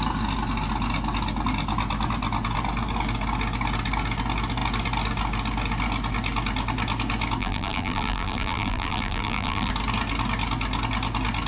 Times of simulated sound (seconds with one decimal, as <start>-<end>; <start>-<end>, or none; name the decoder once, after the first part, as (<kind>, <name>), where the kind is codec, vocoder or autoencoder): 7.4-9.7 (vocoder, BigVGAN v2)